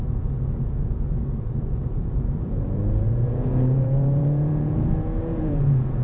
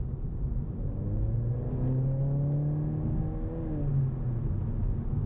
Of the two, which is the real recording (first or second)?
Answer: second